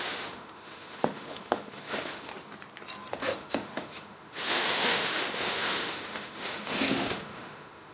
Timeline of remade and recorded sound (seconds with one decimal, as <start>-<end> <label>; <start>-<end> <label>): 0.0-2.3 remade; 2.3-3.1 recorded; 3.1-7.9 remade